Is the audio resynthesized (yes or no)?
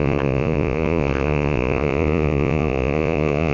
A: yes